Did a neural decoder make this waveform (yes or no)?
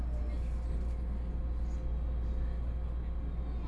no